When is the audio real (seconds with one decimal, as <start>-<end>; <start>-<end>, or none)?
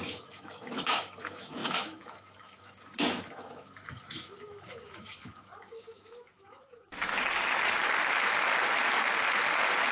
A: 7.8-9.9